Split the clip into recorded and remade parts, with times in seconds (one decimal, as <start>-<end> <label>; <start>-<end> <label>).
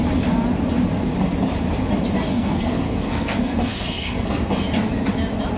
0.0-2.3 recorded; 2.3-4.5 remade; 4.5-5.6 recorded